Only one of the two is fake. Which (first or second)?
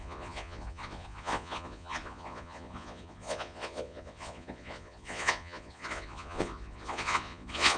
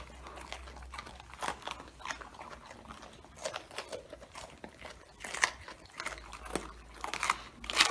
first